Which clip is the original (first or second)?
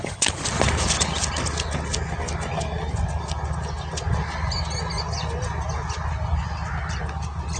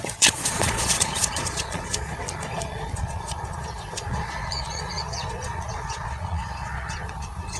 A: first